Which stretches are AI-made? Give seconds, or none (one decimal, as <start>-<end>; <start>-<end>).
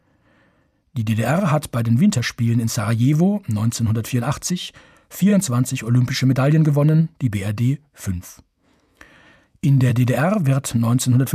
4.5-5.3; 7.0-9.9